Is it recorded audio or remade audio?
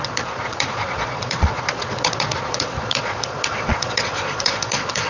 remade